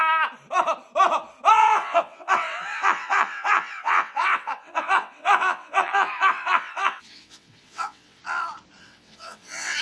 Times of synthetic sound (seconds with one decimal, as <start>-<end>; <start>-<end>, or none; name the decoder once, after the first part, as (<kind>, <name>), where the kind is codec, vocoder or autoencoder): 1.5-8.2 (vocoder, WaveNeXt); 8.8-9.8